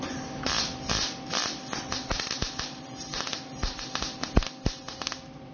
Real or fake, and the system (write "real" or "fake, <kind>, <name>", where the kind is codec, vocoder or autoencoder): real